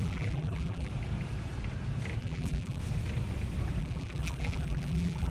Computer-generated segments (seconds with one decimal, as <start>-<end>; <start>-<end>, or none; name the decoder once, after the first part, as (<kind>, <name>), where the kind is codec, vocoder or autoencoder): 0.0-0.9 (vocoder, BigVGAN v2); 2.2-2.8; 3.8-5.3